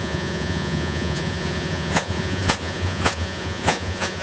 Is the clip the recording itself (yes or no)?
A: no